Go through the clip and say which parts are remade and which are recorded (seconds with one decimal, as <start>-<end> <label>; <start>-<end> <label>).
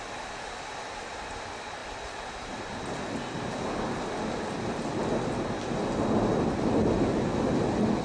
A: 0.0-8.0 recorded